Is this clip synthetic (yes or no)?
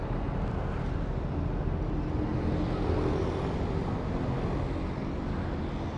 no